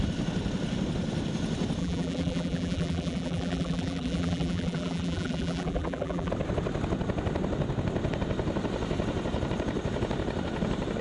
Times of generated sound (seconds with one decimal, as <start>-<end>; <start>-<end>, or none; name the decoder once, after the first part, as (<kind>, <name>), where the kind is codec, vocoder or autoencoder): 1.8-6.3 (vocoder, BigVGAN v2)